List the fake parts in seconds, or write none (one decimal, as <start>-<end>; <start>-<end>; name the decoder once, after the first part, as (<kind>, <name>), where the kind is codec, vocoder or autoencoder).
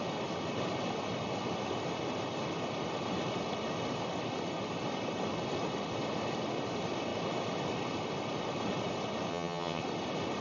9.3-9.8 (vocoder, HiFi-GAN)